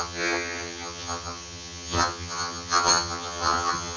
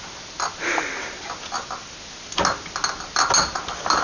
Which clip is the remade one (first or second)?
first